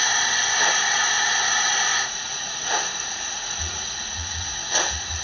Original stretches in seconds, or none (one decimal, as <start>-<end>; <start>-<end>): 0.0-1.9